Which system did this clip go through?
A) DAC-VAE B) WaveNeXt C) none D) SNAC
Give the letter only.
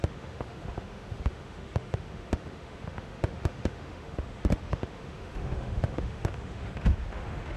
A